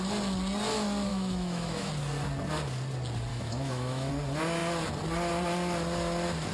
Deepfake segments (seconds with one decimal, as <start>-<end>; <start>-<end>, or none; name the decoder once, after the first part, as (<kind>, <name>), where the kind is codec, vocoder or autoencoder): 1.1-1.9 (autoencoder, DAC-VAE); 3.3-4.1